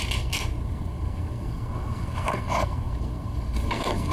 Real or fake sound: fake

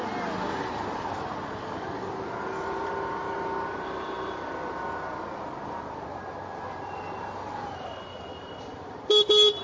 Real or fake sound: real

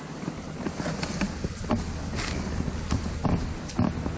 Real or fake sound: real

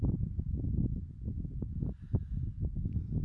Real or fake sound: real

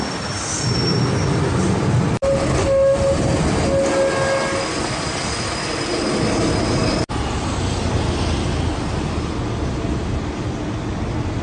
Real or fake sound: real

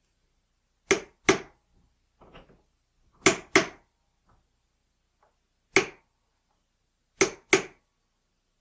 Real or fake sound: real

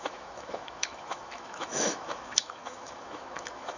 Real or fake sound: fake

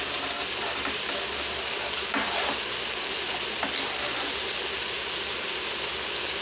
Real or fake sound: real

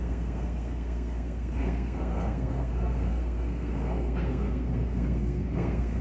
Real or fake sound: fake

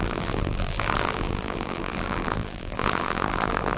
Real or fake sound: fake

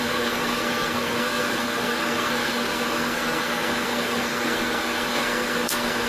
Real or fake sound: fake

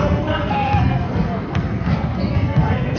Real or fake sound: fake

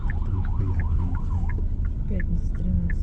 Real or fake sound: real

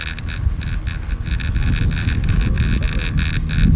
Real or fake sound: real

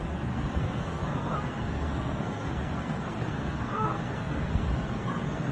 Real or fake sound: fake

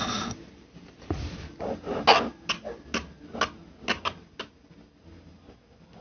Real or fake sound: real